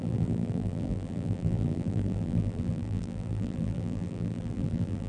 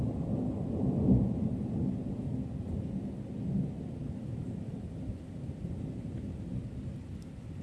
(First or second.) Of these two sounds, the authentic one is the second